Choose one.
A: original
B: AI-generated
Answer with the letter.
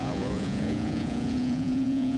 B